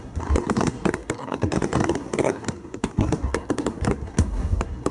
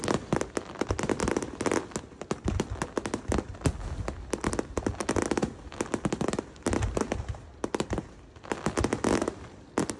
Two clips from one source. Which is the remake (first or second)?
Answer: first